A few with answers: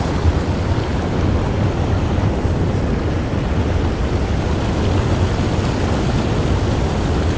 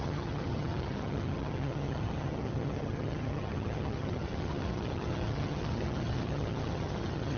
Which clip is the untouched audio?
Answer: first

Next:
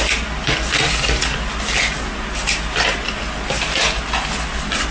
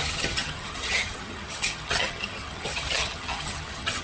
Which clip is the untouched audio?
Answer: first